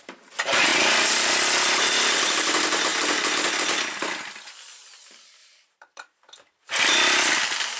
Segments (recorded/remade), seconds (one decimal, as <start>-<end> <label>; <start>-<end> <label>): 0.0-0.7 recorded; 0.7-1.3 remade; 1.3-5.4 recorded; 5.4-6.9 remade; 6.9-7.8 recorded